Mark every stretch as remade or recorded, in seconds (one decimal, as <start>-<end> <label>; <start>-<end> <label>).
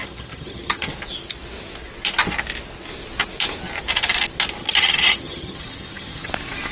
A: 0.0-0.9 remade; 0.9-4.6 recorded; 4.6-6.3 remade; 6.3-6.7 recorded